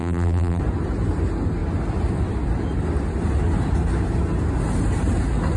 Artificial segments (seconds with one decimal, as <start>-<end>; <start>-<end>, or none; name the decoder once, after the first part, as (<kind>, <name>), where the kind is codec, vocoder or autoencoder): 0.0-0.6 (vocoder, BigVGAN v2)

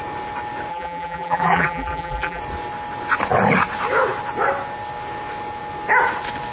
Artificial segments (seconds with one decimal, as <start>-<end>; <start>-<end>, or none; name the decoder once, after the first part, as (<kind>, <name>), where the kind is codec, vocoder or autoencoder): 0.7-2.4 (vocoder, BigVGAN v2)

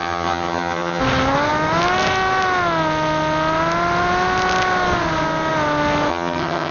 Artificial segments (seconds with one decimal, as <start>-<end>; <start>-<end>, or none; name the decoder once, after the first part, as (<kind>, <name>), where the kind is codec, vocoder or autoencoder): 0.0-1.0 (vocoder, HiFi-GAN); 6.1-6.7

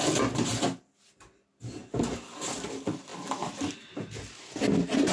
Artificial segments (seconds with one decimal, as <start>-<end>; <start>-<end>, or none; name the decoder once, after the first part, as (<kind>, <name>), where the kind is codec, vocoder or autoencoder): none